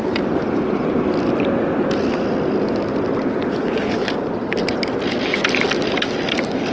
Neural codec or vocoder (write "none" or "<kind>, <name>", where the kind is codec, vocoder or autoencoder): none